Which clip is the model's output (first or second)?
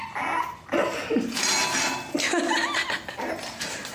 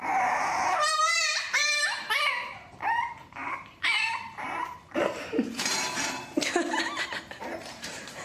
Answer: second